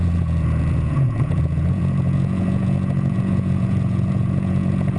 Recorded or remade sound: remade